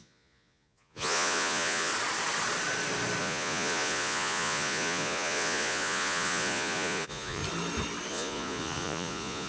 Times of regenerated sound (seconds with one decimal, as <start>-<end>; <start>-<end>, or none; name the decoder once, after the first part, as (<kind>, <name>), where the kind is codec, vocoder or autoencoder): 0.0-1.9 (vocoder, Vocos); 3.2-7.4; 8.1-9.5